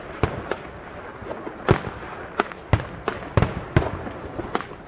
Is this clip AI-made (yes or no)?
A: no